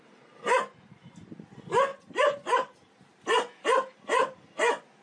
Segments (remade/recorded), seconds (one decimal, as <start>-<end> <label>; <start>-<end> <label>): 0.0-1.9 recorded; 1.9-3.2 remade; 3.2-5.0 recorded